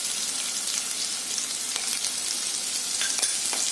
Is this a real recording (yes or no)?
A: yes